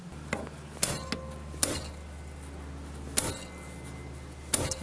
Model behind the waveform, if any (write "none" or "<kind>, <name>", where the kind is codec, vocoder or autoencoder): none